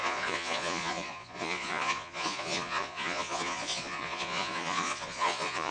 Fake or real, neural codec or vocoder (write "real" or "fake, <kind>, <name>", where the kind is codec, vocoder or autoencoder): fake, vocoder, Vocos